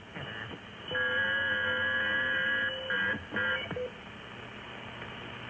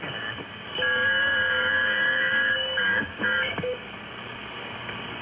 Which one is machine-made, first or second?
second